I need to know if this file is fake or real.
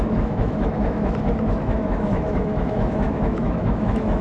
fake